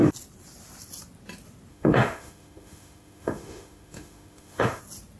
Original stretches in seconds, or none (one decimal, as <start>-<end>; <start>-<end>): 0.0-1.7; 4.8-5.2